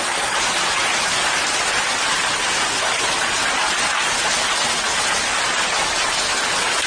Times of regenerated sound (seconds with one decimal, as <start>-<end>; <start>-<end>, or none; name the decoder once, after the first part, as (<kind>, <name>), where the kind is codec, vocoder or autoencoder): none